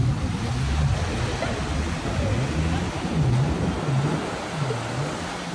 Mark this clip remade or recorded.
recorded